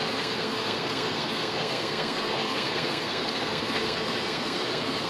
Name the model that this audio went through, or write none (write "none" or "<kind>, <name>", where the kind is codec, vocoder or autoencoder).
codec, SNAC